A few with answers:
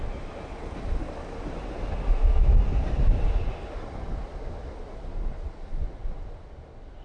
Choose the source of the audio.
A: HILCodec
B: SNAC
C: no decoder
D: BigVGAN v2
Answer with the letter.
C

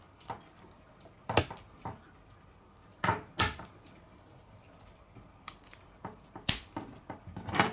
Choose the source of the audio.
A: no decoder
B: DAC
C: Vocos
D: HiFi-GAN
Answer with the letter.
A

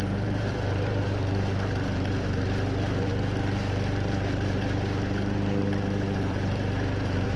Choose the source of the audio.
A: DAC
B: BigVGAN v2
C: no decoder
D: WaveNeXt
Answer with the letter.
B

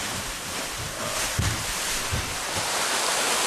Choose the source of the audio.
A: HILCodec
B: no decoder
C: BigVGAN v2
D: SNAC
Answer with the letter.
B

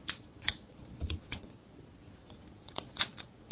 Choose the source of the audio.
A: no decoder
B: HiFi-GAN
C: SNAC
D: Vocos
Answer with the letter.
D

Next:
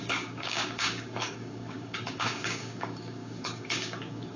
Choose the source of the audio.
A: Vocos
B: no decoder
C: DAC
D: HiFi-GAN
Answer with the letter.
C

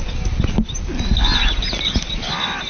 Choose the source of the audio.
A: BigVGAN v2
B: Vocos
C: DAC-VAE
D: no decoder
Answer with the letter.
D